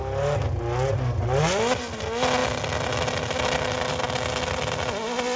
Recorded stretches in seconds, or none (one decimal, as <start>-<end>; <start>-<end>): 0.0-5.4